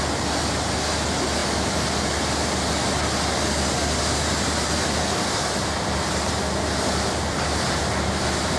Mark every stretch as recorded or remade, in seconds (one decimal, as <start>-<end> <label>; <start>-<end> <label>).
0.0-8.6 recorded